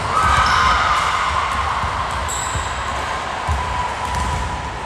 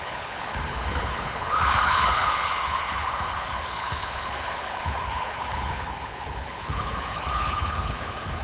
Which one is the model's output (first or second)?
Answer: second